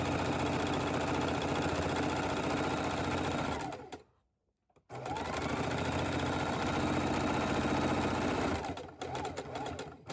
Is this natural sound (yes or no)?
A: yes